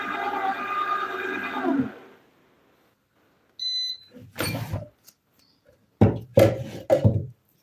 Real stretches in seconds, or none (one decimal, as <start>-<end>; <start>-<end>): 0.0-7.6